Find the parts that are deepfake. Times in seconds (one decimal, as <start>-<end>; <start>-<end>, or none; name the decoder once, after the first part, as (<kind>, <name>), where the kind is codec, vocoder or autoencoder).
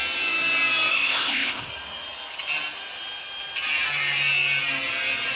0.9-1.7 (codec, ZipCodec)